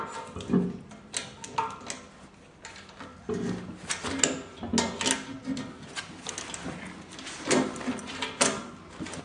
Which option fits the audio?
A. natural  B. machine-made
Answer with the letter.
A